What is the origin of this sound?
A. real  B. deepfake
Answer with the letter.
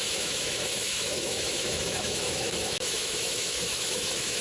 B